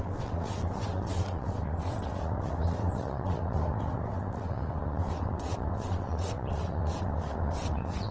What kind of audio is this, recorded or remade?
remade